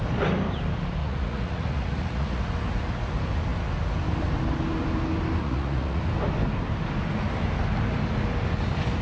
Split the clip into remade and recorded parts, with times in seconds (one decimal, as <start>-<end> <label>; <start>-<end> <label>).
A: 0.0-1.0 recorded; 1.0-2.4 remade; 2.4-5.4 recorded; 5.4-6.0 remade; 6.0-9.0 recorded